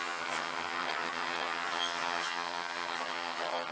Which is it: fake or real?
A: fake